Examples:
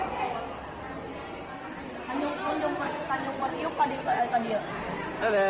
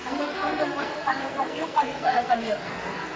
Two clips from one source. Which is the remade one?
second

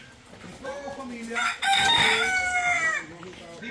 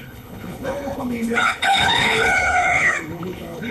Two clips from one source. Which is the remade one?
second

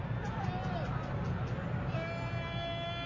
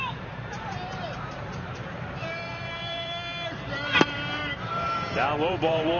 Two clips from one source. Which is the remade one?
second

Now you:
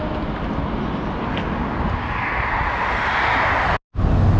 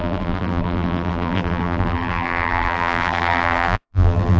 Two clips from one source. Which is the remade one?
second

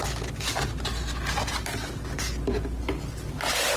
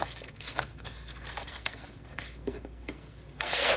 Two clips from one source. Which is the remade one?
second